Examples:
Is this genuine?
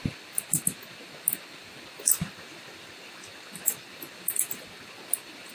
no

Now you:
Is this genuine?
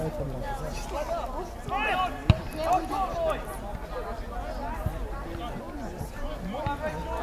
yes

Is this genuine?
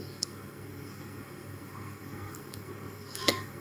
no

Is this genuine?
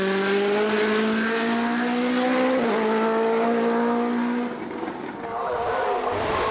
yes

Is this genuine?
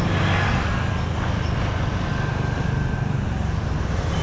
yes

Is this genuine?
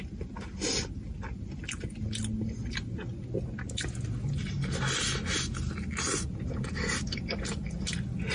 yes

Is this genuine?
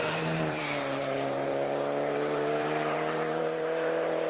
no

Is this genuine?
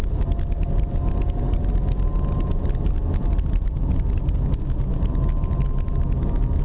yes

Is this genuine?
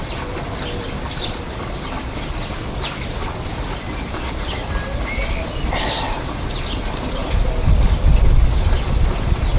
yes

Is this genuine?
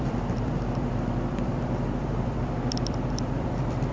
no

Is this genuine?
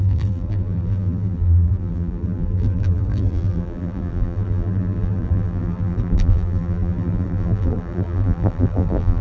no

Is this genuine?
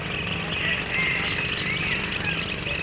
yes